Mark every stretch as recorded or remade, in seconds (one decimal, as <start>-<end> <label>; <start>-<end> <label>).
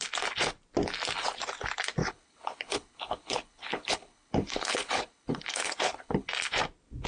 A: 0.0-2.0 recorded; 2.0-6.3 remade; 6.3-7.1 recorded